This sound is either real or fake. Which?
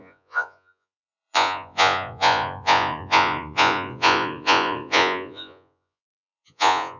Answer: fake